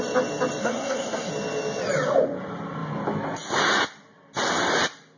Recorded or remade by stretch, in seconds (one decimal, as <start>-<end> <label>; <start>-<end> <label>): 0.0-0.6 recorded; 0.6-1.3 remade; 1.3-5.2 recorded